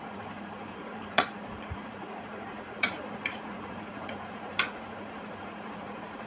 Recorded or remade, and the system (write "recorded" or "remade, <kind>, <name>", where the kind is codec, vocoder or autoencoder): remade, vocoder, Vocos